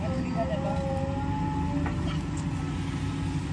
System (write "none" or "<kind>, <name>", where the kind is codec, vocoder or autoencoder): none